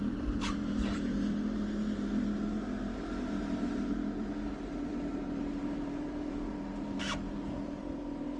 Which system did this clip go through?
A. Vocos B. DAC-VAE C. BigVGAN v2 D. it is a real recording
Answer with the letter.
C